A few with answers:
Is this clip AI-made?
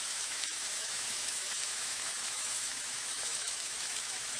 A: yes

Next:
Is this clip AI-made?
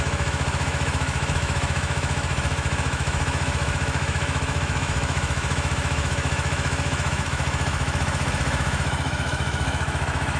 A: yes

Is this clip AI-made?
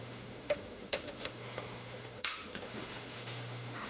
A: yes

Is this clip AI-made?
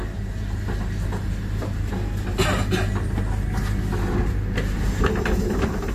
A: no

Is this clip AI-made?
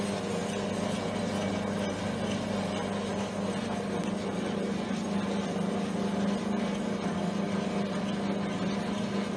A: no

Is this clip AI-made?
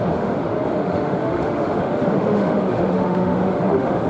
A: yes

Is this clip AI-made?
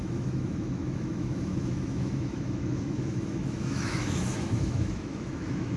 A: yes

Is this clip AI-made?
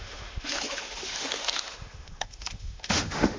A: yes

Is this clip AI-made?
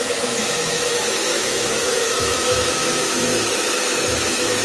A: yes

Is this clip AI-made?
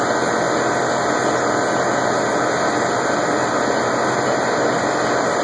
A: no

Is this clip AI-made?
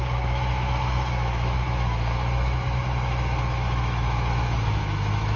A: yes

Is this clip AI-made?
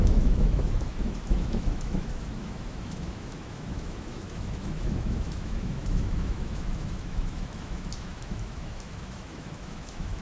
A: yes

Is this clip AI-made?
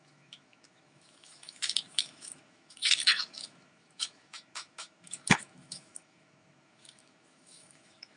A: yes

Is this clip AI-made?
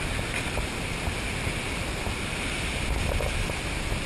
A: no